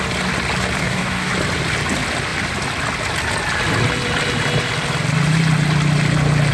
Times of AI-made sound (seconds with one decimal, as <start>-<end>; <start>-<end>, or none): 0.8-1.3